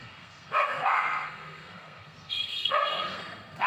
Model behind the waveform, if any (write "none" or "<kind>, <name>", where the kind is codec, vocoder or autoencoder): codec, SNAC